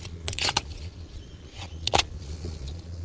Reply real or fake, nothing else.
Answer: fake